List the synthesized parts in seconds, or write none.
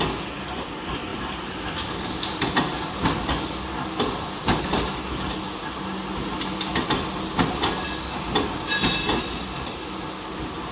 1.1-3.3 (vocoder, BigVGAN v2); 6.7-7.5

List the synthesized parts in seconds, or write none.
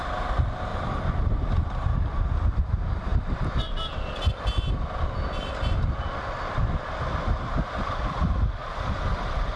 0.7-1.9 (vocoder, BigVGAN v2); 3.1-5.0; 8.6-9.6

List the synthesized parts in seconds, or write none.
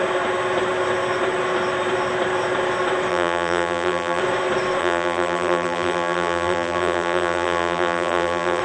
3.1-4.2 (vocoder, BigVGAN v2); 4.8-8.6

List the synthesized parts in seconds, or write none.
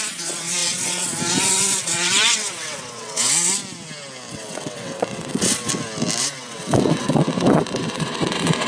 0.0-3.6 (vocoder, WaveNeXt); 4.3-5.7; 6.2-8.7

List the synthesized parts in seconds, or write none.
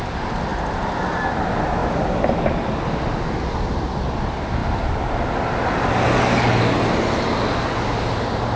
none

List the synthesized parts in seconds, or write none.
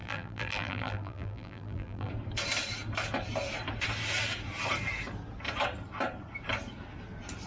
0.0-2.1 (vocoder, BigVGAN v2)